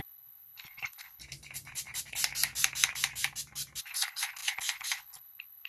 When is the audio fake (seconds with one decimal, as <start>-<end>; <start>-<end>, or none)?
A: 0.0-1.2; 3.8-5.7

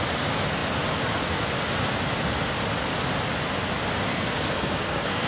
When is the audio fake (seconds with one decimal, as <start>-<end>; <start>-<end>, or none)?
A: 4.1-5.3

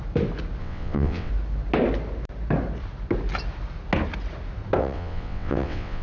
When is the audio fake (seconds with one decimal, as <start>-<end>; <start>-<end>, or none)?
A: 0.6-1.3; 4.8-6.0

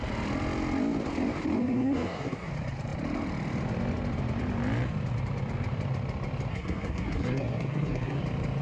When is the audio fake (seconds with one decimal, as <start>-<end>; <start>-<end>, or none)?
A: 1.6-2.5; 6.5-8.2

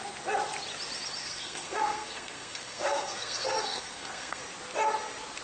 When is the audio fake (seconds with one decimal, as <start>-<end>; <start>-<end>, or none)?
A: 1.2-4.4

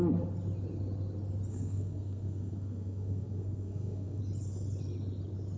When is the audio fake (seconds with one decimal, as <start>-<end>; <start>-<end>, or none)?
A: 1.5-4.2